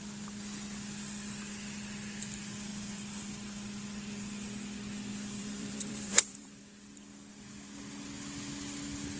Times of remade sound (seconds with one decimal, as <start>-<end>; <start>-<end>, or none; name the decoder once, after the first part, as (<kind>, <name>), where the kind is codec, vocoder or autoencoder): 5.4-6.6 (vocoder, BigVGAN v2)